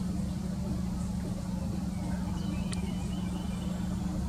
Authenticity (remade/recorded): recorded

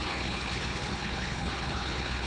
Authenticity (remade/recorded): remade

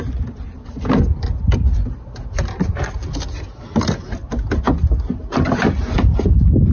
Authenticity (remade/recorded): recorded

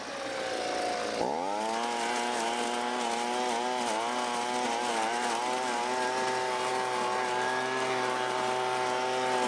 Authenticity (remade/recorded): recorded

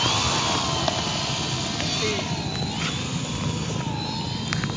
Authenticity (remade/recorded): recorded